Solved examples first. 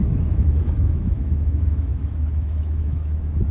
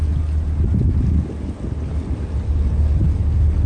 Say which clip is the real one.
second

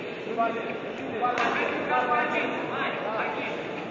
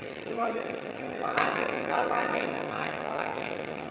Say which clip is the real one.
first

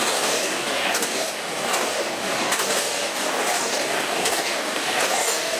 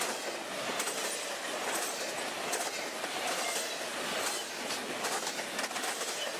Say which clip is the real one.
second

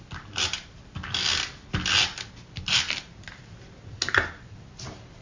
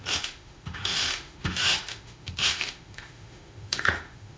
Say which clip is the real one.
first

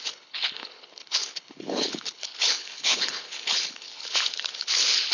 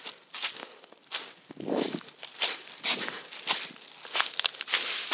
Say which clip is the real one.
second